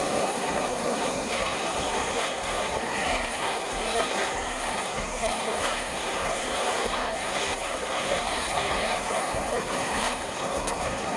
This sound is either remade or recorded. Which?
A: remade